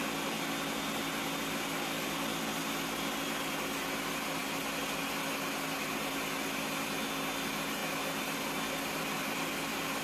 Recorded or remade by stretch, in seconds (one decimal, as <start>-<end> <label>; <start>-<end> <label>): 0.0-10.0 recorded